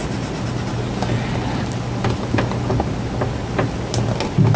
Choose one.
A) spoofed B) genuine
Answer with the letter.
B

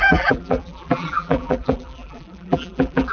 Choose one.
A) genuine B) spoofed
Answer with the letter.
B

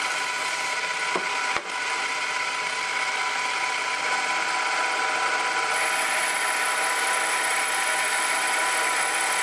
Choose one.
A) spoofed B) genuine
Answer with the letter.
B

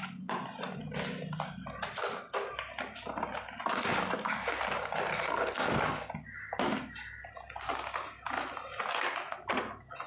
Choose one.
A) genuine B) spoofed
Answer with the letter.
A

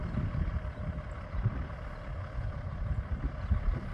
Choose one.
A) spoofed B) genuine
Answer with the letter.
B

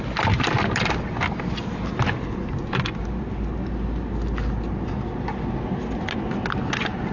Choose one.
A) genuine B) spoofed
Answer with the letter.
A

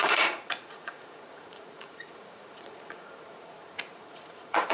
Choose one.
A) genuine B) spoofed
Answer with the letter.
B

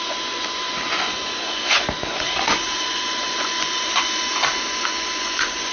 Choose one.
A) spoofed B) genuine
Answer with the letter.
A